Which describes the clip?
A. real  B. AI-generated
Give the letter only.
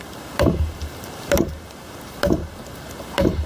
B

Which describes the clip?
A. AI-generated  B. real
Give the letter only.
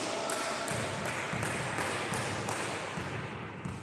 B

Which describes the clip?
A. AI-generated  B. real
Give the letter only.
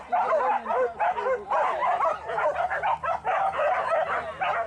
B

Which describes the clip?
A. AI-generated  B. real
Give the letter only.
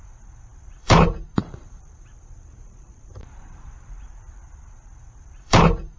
A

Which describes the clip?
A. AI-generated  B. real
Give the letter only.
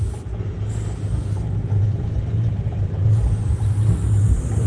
A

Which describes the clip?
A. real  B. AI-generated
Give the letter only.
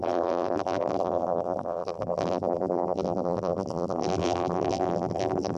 B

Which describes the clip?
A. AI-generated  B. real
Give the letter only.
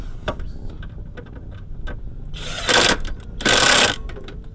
B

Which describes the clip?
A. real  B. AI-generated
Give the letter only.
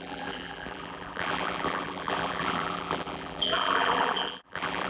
B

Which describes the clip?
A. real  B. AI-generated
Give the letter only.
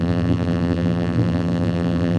B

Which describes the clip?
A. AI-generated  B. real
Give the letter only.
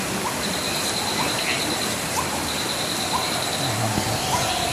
B